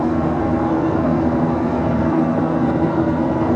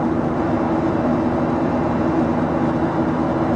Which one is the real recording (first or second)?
second